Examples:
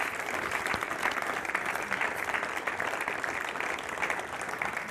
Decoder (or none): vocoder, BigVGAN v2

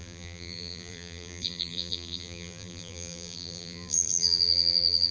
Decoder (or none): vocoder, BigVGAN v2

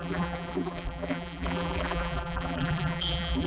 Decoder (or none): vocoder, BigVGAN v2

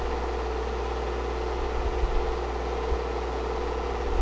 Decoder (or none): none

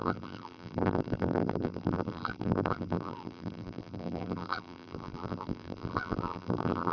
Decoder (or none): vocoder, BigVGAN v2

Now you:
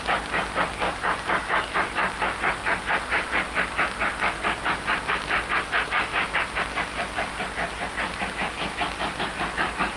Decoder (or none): none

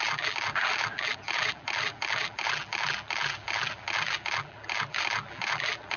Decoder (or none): vocoder, BigVGAN v2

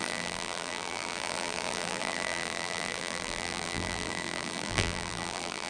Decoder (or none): vocoder, BigVGAN v2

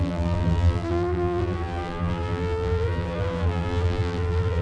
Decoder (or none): vocoder, BigVGAN v2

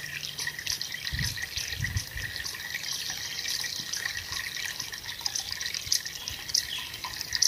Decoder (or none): none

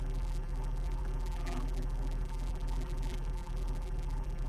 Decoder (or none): vocoder, BigVGAN v2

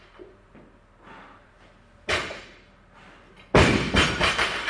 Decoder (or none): vocoder, BigVGAN v2